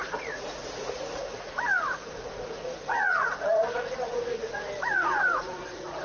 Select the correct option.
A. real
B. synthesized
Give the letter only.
B